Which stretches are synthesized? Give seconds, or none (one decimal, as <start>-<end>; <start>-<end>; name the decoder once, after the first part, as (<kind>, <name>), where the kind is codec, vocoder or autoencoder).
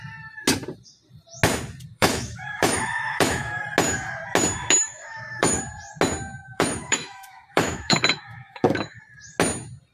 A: 1.9-3.6 (autoencoder, DAC-VAE); 4.8-5.6; 6.4-9.0